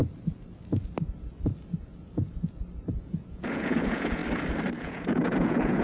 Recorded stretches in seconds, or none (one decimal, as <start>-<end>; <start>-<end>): 0.0-2.9; 4.2-4.8